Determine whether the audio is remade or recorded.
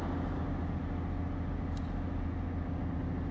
recorded